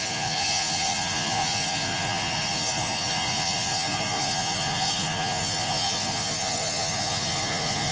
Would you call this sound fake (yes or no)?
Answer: yes